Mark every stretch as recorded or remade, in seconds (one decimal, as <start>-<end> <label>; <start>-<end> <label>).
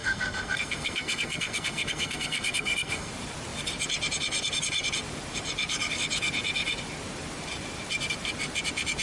0.0-3.1 remade; 3.1-9.0 recorded